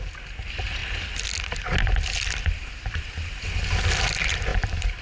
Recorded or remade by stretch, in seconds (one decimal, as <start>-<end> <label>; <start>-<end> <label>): 0.0-4.5 recorded; 4.5-5.0 remade